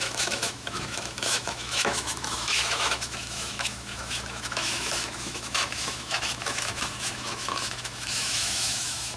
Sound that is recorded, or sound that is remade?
remade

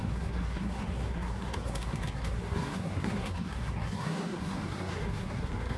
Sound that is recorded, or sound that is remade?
remade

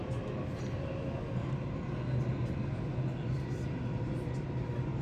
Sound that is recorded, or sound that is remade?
recorded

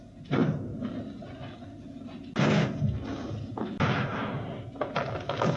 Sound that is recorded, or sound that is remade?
recorded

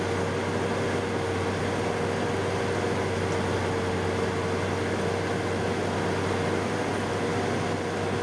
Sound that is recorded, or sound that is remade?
recorded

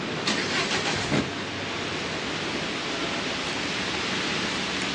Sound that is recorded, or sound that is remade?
recorded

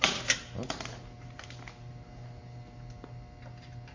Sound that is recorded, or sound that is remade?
recorded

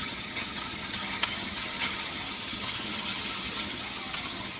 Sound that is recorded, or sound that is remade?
remade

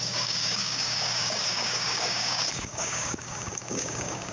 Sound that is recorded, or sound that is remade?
remade